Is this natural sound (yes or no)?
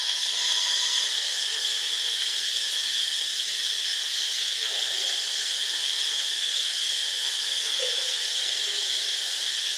no